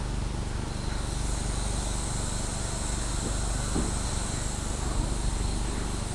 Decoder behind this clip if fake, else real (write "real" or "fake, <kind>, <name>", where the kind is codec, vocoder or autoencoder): real